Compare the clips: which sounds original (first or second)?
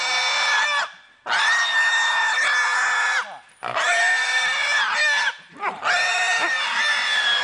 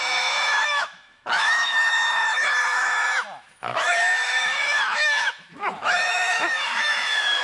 first